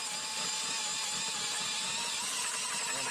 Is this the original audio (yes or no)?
yes